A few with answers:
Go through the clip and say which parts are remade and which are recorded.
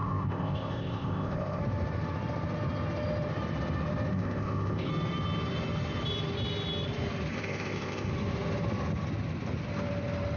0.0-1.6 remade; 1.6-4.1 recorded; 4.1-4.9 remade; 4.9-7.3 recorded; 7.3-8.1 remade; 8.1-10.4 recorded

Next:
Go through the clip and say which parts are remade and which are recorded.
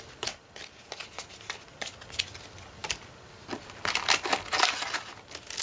0.0-5.6 recorded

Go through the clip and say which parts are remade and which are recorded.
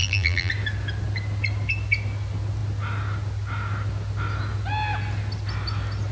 0.0-0.5 remade; 0.5-6.1 recorded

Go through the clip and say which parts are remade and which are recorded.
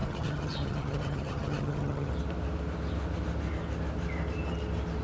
0.0-2.1 remade; 2.1-5.0 recorded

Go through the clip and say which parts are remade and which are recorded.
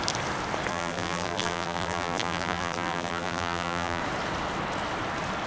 0.0-0.7 recorded; 0.7-4.0 remade; 4.0-5.5 recorded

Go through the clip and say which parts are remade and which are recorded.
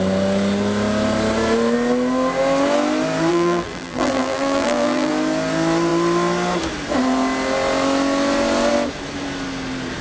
0.0-3.3 recorded; 3.3-5.1 remade; 5.1-10.0 recorded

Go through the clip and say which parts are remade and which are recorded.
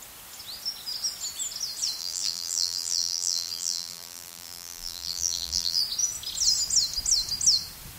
0.0-2.0 recorded; 2.0-5.8 remade; 5.8-8.0 recorded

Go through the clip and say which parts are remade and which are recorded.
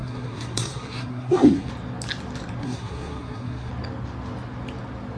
0.0-1.7 remade; 1.7-2.6 recorded; 2.6-3.7 remade; 3.7-5.2 recorded